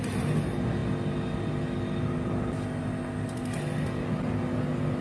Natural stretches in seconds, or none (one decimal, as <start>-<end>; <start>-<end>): 0.0-5.0